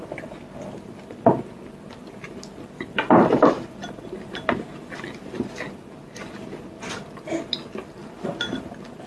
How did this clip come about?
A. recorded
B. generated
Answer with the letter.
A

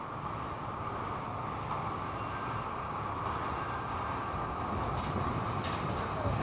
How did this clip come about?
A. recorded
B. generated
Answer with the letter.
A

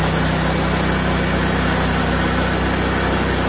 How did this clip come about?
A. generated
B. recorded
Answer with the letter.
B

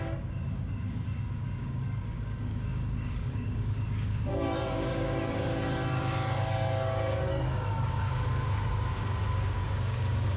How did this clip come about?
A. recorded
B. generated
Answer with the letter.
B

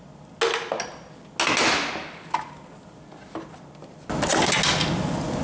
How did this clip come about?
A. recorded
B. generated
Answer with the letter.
A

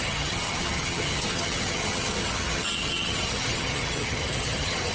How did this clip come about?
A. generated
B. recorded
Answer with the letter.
A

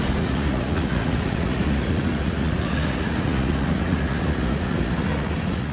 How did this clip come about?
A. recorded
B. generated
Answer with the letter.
B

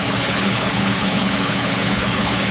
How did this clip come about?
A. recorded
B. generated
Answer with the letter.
B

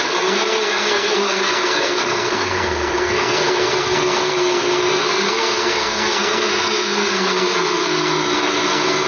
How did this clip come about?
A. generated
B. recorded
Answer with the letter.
A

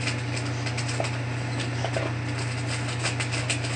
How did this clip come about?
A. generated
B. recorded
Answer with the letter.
B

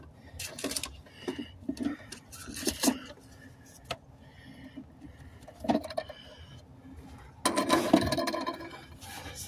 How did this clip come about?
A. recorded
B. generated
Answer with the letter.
A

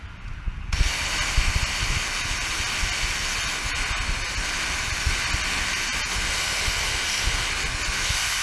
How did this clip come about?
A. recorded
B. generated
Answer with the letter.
A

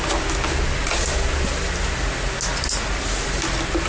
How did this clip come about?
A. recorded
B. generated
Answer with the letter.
A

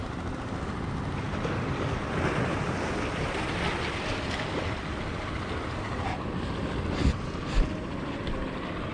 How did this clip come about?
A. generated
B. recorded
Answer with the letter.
B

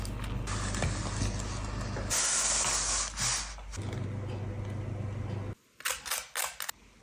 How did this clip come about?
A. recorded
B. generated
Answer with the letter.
A